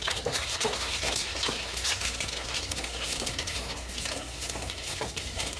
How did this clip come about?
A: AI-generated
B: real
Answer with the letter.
A